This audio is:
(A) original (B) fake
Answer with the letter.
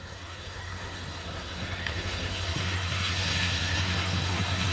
B